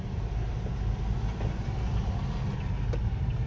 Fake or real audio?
real